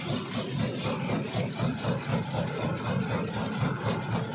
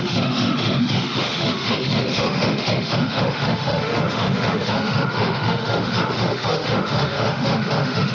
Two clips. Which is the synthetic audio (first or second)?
second